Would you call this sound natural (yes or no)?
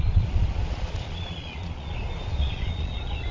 no